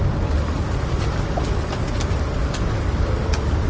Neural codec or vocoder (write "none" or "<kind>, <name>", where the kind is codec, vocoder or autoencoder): none